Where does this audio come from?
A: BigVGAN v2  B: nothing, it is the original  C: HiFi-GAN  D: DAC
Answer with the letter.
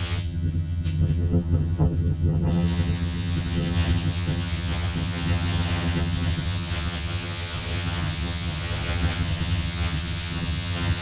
C